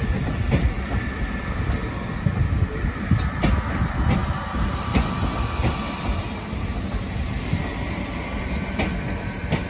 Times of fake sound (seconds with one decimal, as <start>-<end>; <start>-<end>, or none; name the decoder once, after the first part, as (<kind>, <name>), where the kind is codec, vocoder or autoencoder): none